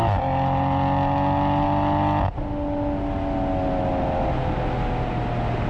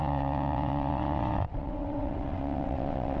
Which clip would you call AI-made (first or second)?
second